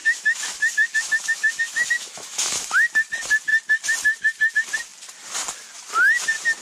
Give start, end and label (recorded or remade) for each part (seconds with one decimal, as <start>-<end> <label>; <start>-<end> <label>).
0.0-2.7 remade; 2.7-6.6 recorded